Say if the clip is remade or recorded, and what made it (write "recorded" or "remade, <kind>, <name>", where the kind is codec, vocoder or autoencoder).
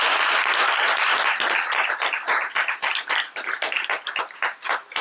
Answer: recorded